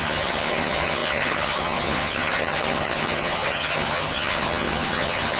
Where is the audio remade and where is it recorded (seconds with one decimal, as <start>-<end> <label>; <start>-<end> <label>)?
0.0-5.4 remade